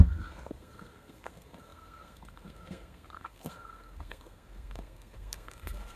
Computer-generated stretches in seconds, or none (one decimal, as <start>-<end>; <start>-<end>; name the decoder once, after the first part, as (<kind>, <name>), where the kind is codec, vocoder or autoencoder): 0.0-6.0 (codec, SNAC)